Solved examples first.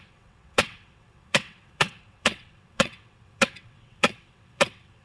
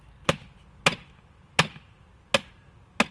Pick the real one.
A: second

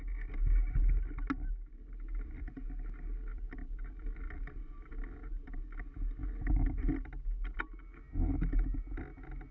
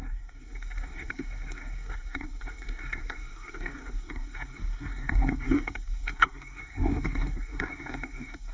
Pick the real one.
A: first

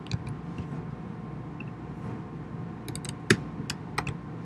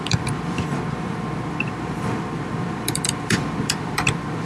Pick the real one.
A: first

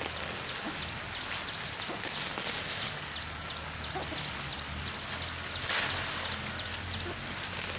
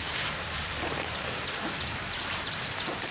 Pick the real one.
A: first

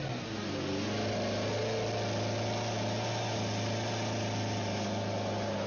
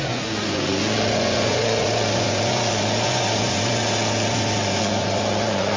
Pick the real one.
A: first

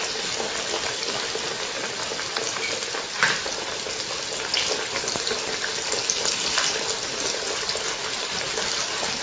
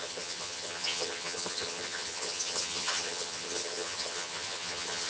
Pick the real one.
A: first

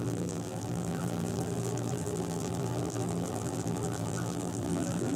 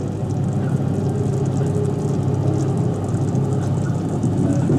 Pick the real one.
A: second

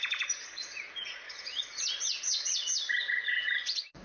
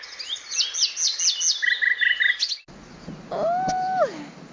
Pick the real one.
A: second